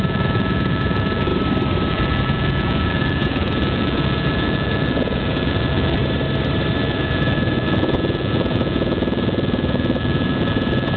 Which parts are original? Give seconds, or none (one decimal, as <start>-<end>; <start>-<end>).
1.3-1.9; 6.0-6.8